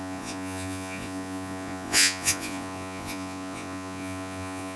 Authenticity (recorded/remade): remade